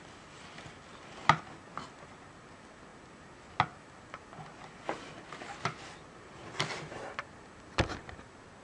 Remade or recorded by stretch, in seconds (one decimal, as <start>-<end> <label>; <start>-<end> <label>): 0.0-8.6 recorded